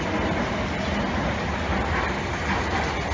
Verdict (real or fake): real